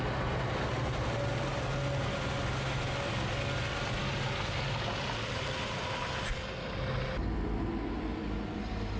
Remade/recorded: recorded